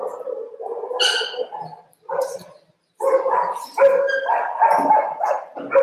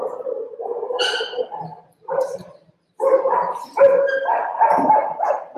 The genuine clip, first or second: first